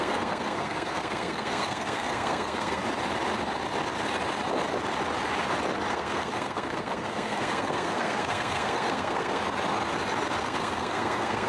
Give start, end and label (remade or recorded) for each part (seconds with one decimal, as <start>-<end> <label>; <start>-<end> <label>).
0.0-2.8 remade; 2.8-5.9 recorded; 5.9-9.4 remade; 9.4-10.4 recorded; 10.4-11.5 remade